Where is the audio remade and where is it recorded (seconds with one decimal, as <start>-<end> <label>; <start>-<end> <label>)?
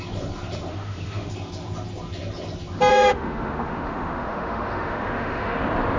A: 0.0-0.7 recorded; 0.7-1.3 remade; 1.3-2.9 recorded; 2.9-5.6 remade; 5.6-6.0 recorded